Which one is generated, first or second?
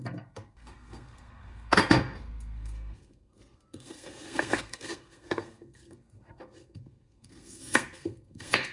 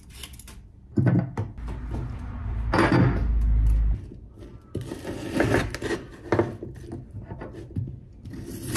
first